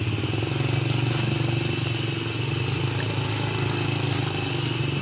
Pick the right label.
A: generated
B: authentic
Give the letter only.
B